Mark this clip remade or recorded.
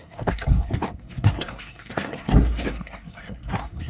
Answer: remade